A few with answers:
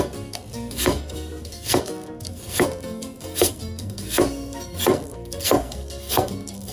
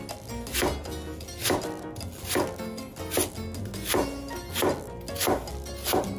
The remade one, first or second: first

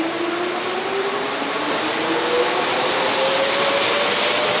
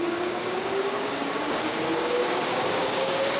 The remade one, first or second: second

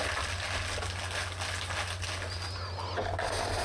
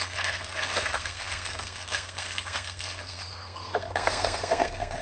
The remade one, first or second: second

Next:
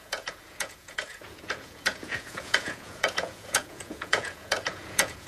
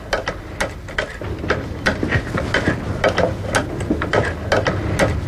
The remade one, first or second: first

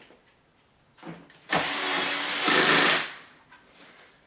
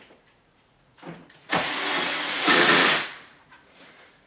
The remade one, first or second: second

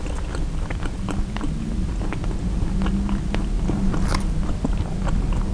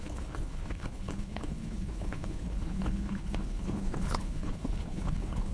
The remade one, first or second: second